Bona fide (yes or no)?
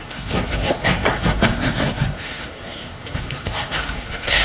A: no